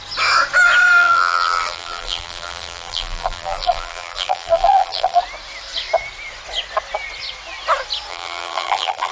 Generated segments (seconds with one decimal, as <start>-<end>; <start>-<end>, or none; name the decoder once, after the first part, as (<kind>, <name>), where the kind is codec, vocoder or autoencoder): 1.0-5.2 (vocoder, BigVGAN v2); 8.1-9.1